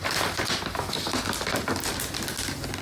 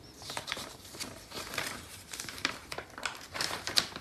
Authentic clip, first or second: first